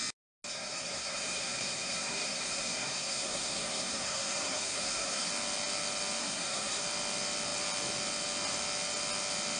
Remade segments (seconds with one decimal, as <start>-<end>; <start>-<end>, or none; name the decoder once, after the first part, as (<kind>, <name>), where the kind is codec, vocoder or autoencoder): 0.5-5.3 (codec, SNAC); 6.2-6.8